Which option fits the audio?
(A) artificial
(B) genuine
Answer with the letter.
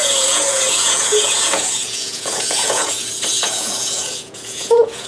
A